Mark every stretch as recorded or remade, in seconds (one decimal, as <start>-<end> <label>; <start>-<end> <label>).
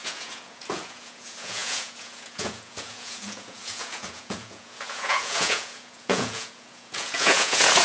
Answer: 0.0-7.8 remade